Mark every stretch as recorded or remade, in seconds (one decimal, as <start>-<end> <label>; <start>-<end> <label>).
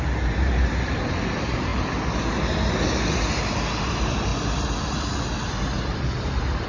0.0-1.7 remade; 1.7-3.8 recorded; 3.8-4.3 remade; 4.3-5.5 recorded; 5.5-6.7 remade